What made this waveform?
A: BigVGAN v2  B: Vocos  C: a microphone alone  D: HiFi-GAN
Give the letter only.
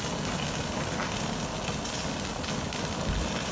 C